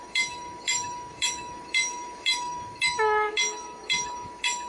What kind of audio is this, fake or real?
fake